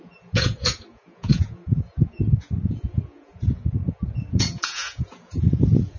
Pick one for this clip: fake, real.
fake